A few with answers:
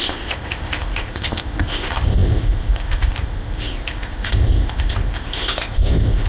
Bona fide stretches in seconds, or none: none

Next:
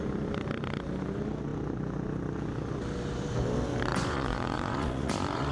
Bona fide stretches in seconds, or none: 0.0-3.9

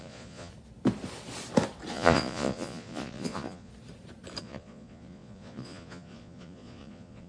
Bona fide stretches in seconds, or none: 0.5-1.9; 3.7-4.4